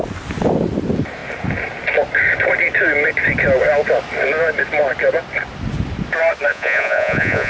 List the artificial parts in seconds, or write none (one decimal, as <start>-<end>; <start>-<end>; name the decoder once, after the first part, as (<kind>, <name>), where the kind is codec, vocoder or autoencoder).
6.5-7.5 (vocoder, Vocos)